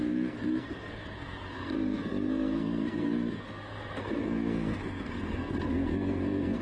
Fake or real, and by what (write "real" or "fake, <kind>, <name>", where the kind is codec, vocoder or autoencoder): fake, codec, SNAC